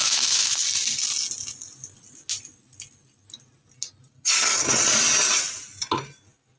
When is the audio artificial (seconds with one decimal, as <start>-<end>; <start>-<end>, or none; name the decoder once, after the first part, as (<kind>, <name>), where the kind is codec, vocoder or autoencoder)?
0.0-0.5 (autoencoder, DAC-VAE)